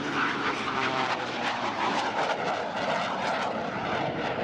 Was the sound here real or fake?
fake